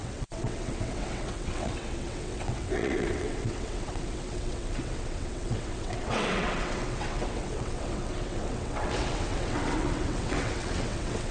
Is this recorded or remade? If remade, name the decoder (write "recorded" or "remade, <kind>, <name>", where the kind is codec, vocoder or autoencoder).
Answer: remade, vocoder, WaveNeXt